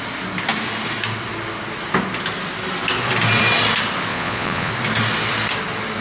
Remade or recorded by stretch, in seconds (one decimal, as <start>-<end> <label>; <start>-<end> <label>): 0.0-4.1 recorded; 4.1-4.7 remade; 4.7-6.0 recorded